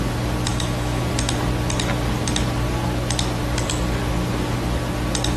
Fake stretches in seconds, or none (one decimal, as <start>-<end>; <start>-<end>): 0.5-1.0